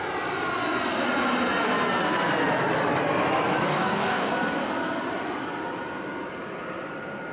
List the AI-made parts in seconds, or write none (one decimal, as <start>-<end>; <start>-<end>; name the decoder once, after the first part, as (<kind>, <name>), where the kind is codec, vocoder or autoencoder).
3.7-4.3 (codec, DAC)